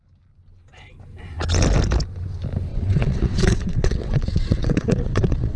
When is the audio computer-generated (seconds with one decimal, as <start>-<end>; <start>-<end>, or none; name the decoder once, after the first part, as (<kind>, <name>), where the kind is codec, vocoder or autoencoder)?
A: 2.7-5.6 (vocoder, WaveNeXt)